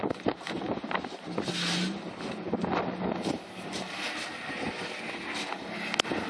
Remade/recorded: recorded